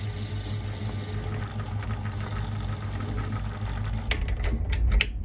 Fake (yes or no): no